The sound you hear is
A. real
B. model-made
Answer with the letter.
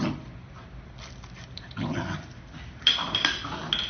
B